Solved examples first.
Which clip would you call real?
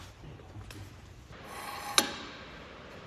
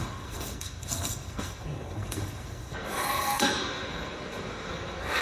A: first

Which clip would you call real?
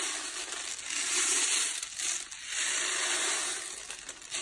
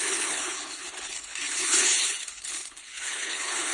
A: first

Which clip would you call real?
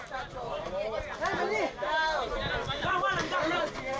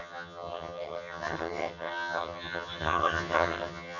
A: first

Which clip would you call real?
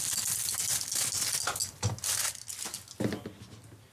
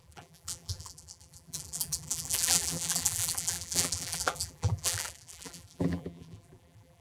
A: first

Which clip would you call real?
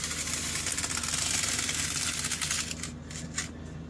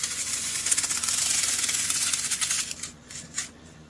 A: first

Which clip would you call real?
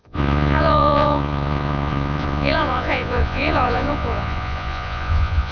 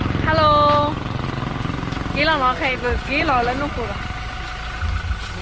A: second